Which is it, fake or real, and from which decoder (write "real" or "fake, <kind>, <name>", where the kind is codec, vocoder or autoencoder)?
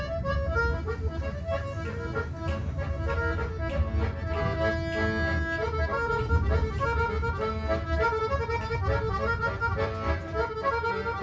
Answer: real